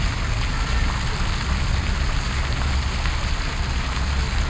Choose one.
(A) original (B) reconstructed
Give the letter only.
A